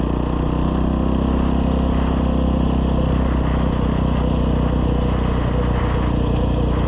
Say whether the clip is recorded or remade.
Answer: recorded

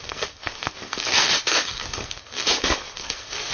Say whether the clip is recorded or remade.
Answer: remade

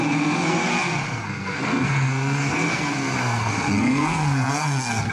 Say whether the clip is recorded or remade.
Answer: remade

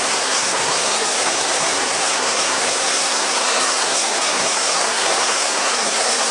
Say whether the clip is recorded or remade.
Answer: remade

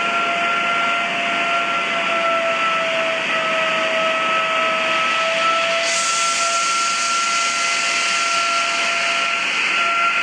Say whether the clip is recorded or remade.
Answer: recorded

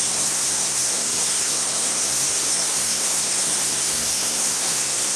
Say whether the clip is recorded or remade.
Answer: remade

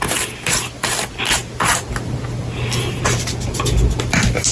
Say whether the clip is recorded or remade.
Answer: recorded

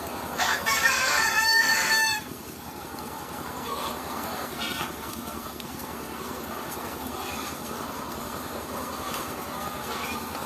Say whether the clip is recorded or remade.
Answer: remade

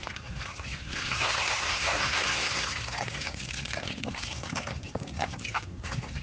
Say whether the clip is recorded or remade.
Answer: remade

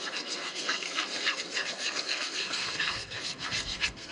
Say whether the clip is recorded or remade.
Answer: remade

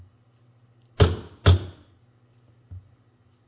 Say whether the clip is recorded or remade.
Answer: recorded